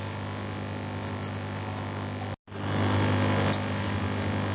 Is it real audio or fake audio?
real